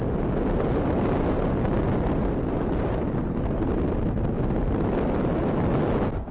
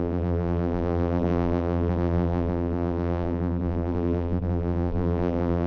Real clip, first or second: first